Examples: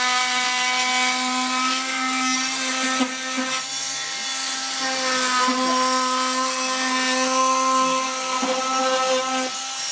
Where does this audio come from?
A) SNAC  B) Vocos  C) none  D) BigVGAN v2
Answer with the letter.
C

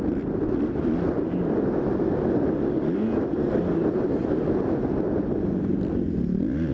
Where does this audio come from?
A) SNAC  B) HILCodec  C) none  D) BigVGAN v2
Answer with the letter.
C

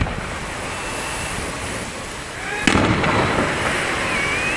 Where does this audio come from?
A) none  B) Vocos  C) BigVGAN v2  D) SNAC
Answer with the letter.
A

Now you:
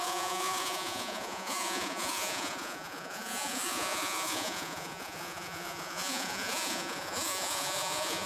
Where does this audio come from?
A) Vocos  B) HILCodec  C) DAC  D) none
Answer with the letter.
A